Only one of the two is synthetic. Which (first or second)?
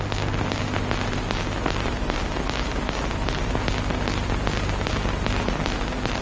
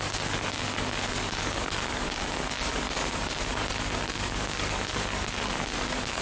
second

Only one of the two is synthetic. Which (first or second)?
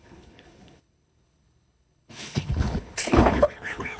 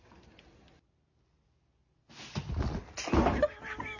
first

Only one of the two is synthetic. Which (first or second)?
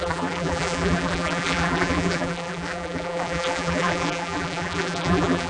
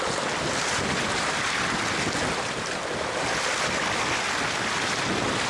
first